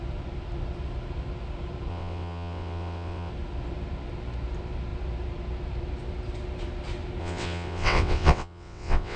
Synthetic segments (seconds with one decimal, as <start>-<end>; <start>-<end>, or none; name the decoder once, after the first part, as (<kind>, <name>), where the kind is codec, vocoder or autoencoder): 1.9-3.3 (vocoder, WaveNeXt); 7.2-9.2